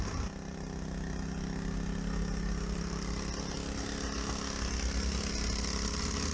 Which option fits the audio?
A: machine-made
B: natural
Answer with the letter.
B